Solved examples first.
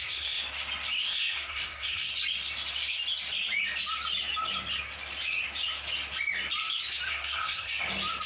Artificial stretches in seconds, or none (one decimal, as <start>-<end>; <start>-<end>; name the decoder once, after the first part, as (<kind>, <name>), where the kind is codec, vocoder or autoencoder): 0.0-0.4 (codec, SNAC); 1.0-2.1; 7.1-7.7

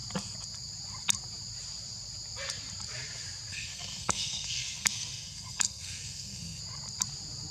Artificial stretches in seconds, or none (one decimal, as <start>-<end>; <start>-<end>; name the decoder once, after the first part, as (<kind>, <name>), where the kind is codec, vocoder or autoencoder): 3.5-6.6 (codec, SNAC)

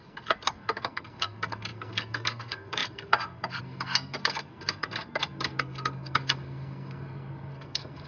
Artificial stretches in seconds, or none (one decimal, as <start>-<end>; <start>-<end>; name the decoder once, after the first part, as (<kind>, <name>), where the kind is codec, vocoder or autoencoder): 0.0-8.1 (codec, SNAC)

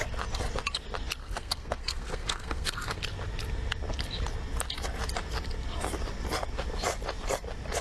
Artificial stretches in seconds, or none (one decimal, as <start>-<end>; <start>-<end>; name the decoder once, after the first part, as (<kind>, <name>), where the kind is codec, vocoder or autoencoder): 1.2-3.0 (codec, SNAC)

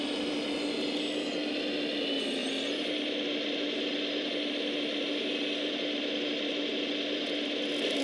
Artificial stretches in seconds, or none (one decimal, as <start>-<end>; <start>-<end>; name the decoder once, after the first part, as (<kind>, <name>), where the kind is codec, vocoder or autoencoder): none